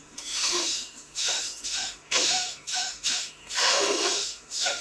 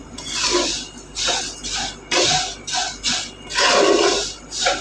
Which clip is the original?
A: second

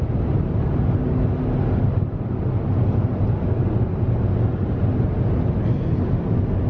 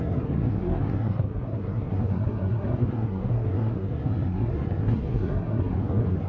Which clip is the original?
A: first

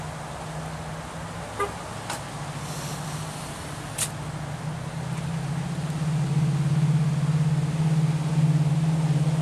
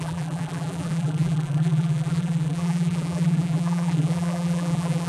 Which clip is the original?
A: first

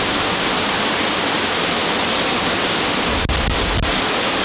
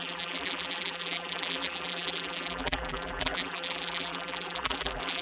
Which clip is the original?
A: first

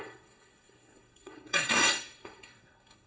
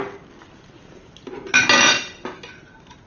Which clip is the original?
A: second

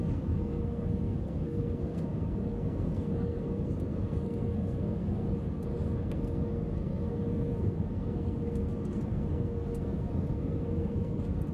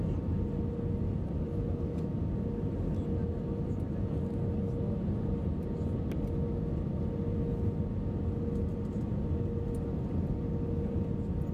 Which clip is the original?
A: second